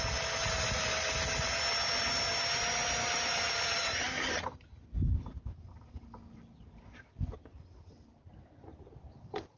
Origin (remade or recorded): recorded